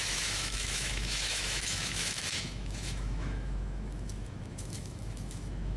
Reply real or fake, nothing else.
fake